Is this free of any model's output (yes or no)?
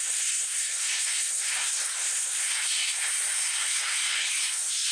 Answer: no